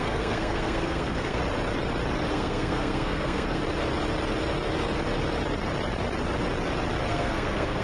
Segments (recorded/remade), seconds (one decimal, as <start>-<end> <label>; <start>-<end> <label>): 0.0-1.4 remade; 1.4-2.3 recorded; 2.3-3.6 remade; 3.6-7.1 recorded; 7.1-7.8 remade